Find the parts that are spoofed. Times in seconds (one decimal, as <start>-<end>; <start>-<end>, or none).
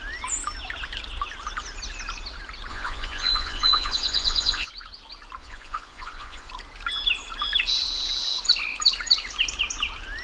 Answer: 2.7-4.7; 5.4-6.5